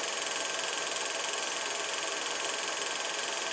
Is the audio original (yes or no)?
yes